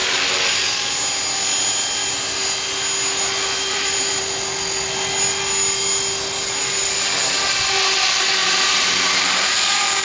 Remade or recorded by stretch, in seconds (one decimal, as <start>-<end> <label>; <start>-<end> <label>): 0.0-3.4 recorded; 3.4-4.2 remade; 4.2-8.4 recorded; 8.4-10.0 remade